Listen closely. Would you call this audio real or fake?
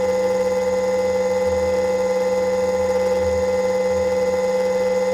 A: real